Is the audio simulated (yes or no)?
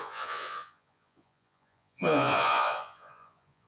yes